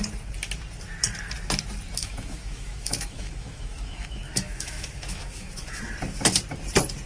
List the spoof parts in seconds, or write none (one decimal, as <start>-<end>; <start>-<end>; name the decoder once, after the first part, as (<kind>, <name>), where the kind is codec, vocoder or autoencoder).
2.0-5.8 (autoencoder, DAC-VAE)